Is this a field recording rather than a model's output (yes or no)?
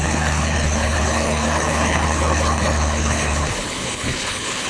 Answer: no